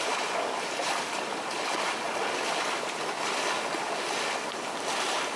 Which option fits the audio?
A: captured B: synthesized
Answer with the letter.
A